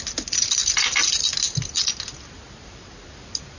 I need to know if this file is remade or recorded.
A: recorded